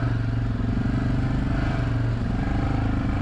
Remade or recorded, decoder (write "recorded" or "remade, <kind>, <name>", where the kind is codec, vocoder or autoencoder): recorded